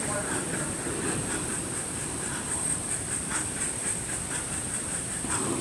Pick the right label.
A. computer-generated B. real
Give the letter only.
A